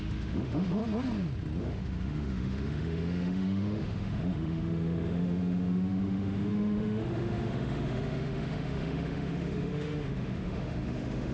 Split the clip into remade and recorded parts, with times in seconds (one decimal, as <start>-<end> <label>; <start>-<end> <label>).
0.0-0.8 remade; 0.8-1.6 recorded; 1.6-11.3 remade